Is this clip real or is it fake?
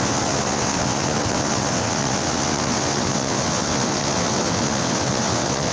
fake